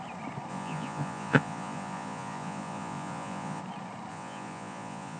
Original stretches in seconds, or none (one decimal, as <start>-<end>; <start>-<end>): 0.0-0.5; 3.6-4.1